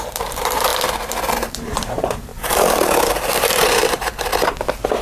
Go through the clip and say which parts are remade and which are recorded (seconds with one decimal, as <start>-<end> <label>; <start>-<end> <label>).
0.0-0.7 remade; 0.7-1.5 recorded; 1.5-4.3 remade; 4.3-5.0 recorded